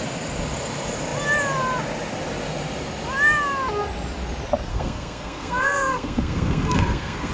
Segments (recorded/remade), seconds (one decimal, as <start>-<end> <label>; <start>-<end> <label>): 0.0-4.7 recorded; 4.7-7.3 remade